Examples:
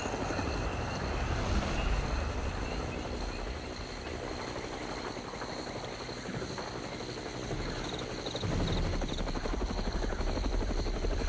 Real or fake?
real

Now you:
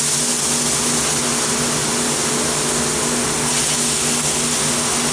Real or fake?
real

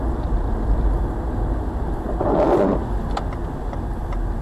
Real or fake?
real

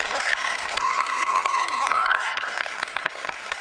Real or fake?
fake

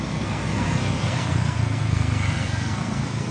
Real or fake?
fake